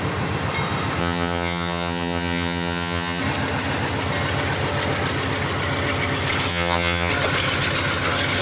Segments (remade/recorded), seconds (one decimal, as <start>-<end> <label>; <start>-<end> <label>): 0.0-1.0 recorded; 1.0-3.2 remade; 3.2-6.5 recorded; 6.5-7.1 remade; 7.1-8.4 recorded

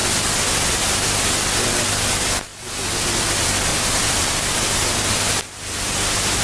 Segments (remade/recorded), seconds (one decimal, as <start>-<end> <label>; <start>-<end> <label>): 0.0-3.7 recorded; 3.7-4.3 remade; 4.3-6.4 recorded

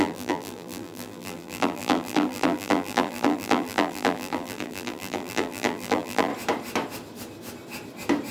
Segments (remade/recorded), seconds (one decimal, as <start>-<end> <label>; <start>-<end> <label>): 0.0-6.3 remade; 6.3-8.3 recorded

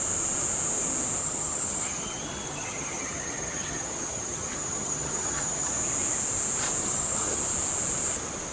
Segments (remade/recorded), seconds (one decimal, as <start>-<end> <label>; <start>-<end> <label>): 0.0-1.2 recorded; 1.2-5.7 remade; 5.7-6.8 recorded; 6.8-7.4 remade; 7.4-8.5 recorded

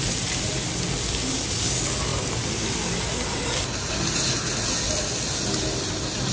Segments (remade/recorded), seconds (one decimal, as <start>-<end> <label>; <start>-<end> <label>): 0.0-6.3 recorded